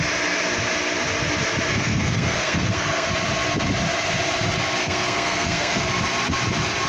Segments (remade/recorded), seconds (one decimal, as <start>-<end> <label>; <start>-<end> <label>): 0.0-1.7 recorded; 1.7-3.1 remade; 3.1-4.8 recorded; 4.8-5.9 remade; 5.9-6.9 recorded